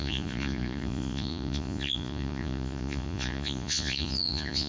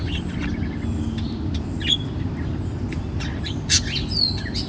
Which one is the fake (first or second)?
first